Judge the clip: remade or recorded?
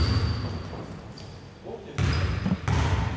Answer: recorded